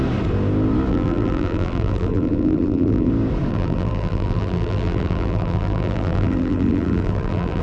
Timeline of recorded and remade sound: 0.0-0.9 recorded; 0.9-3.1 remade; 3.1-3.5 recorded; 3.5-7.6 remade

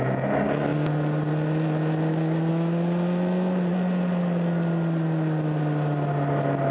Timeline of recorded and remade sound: 0.0-6.7 recorded

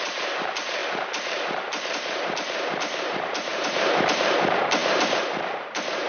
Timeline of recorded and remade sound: 0.0-6.1 remade

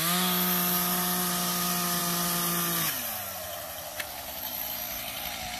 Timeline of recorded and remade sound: 0.0-5.6 recorded

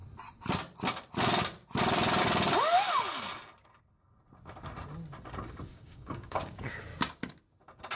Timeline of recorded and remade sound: 0.0-5.7 recorded; 5.7-6.8 remade; 6.8-8.0 recorded

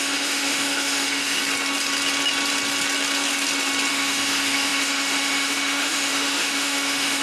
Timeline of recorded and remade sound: 0.0-1.4 remade; 1.4-3.9 recorded; 3.9-7.2 remade

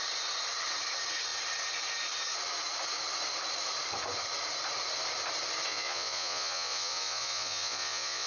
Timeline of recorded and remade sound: 0.0-5.7 recorded; 5.7-8.3 remade